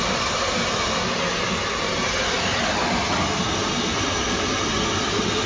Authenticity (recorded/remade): recorded